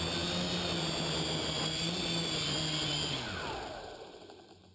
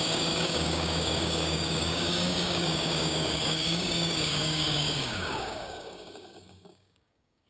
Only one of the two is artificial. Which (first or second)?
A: second